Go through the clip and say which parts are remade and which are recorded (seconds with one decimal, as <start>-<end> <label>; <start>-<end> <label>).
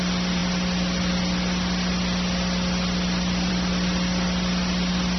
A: 0.0-5.2 recorded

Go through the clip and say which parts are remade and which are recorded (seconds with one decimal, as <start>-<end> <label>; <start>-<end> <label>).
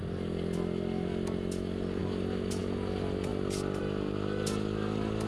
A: 0.0-5.3 recorded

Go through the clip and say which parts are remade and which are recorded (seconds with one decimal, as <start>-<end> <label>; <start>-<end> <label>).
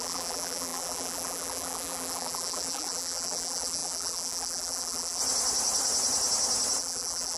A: 0.0-5.2 remade; 5.2-6.8 recorded; 6.8-7.4 remade